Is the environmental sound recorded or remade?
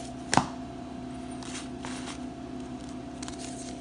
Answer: recorded